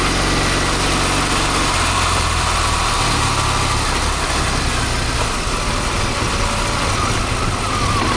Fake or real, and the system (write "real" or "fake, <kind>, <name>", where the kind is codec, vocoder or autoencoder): real